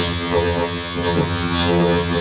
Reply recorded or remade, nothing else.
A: remade